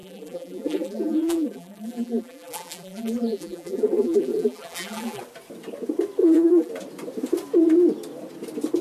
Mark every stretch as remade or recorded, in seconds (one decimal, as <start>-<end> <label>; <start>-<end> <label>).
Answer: 0.0-5.2 remade; 5.2-6.2 recorded; 6.2-6.7 remade; 6.7-8.8 recorded